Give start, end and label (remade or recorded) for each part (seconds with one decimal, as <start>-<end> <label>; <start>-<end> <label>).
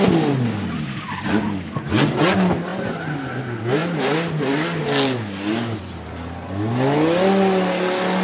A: 0.0-8.2 recorded